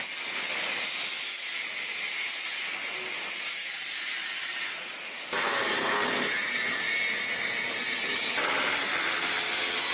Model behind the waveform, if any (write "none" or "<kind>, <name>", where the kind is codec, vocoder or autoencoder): none